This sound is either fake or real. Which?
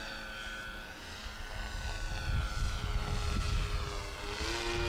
real